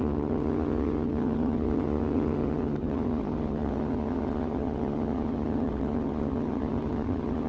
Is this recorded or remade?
remade